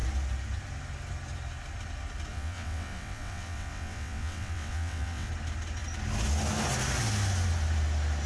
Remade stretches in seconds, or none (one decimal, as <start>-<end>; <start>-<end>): 2.3-5.3